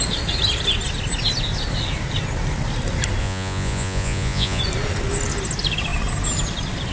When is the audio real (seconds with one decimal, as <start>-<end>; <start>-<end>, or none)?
0.0-3.2; 4.6-6.9

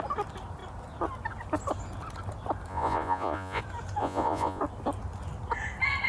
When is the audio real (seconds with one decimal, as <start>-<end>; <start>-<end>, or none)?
0.0-2.7; 3.6-4.0; 4.6-6.1

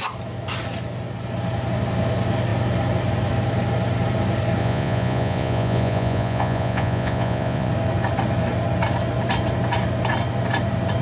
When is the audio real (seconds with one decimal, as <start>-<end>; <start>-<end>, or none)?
0.0-4.6; 7.7-11.0

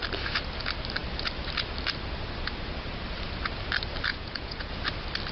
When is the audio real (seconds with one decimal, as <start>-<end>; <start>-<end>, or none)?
0.0-4.1; 4.7-5.3